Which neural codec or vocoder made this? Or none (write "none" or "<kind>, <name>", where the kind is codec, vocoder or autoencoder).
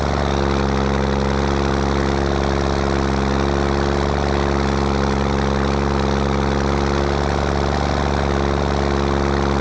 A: none